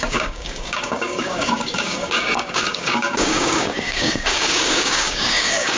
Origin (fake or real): fake